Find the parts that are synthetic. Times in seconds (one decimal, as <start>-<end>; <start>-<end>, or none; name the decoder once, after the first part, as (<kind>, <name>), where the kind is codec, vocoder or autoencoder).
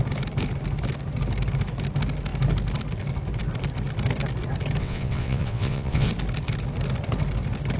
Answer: 4.8-6.1 (vocoder, WaveNeXt)